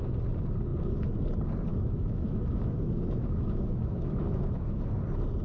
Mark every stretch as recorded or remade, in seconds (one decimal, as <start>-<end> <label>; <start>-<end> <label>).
0.0-1.7 recorded; 1.7-4.9 remade; 4.9-5.4 recorded

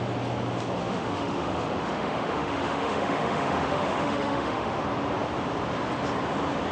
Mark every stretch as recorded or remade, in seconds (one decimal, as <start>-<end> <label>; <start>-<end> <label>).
0.0-0.8 recorded; 0.8-4.8 remade; 4.8-6.7 recorded

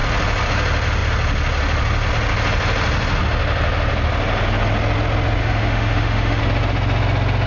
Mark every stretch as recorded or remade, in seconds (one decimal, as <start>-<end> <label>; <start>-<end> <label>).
0.0-5.4 recorded; 5.4-6.4 remade; 6.4-7.5 recorded

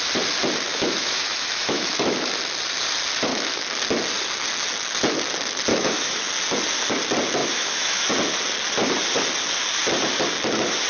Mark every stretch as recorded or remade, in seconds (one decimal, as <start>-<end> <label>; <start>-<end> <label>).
0.0-0.7 recorded; 0.7-2.3 remade; 2.3-3.3 recorded; 3.3-3.8 remade; 3.8-5.7 recorded; 5.7-6.3 remade; 6.3-7.4 recorded; 7.4-8.0 remade; 8.0-10.9 recorded

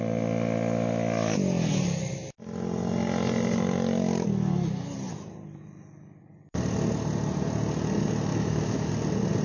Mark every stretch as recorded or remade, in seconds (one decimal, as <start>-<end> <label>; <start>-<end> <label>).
0.0-8.3 recorded; 8.3-8.9 remade; 8.9-9.4 recorded

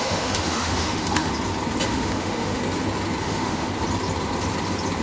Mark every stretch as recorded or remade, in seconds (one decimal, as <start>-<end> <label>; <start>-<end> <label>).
0.0-1.3 remade; 1.3-1.9 recorded; 1.9-2.6 remade; 2.6-3.2 recorded; 3.2-3.7 remade; 3.7-5.0 recorded

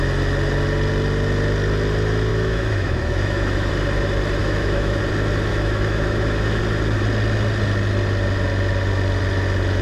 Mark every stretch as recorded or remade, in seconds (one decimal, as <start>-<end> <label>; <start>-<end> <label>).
0.0-2.3 recorded; 2.3-3.7 remade; 3.7-4.4 recorded; 4.4-5.0 remade; 5.0-5.5 recorded; 5.5-6.6 remade; 6.6-9.8 recorded

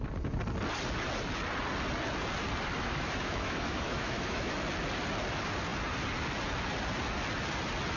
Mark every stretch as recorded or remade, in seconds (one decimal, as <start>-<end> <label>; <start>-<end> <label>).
0.0-2.7 recorded; 2.7-4.5 remade; 4.5-8.0 recorded